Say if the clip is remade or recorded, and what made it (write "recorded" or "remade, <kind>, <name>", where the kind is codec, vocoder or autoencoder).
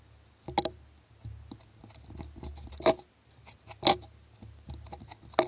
recorded